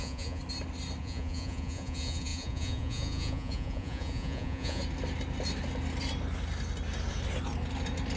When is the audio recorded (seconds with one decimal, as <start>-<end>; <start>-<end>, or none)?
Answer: 0.4-1.0; 4.8-8.2